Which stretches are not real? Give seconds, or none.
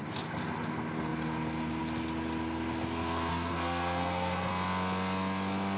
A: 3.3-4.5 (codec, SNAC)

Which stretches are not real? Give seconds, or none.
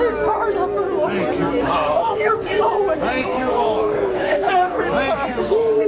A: 2.0-2.6 (codec, SNAC); 3.2-4.8; 5.4-5.9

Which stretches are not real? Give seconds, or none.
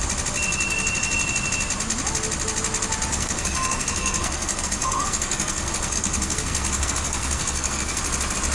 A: 3.1-8.0 (codec, SNAC)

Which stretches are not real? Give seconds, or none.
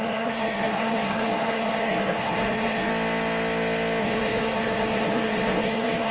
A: 0.0-2.9 (codec, SNAC); 4.0-6.1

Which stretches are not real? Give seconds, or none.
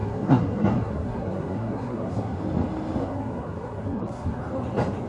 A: 0.0-2.4 (codec, SNAC); 3.0-4.4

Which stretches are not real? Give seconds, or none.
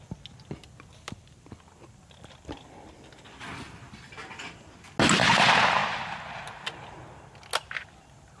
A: none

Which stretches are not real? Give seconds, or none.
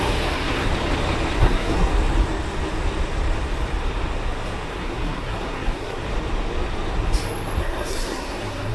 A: 0.0-0.7 (codec, SNAC); 1.4-1.9; 4.7-6.0; 7.6-8.7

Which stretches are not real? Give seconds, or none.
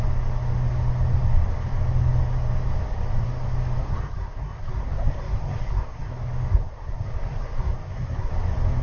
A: 3.8-6.1 (codec, SNAC); 6.5-8.3